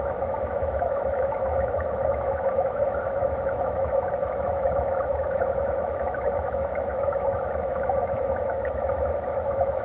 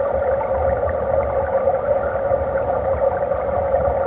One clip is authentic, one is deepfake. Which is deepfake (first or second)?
first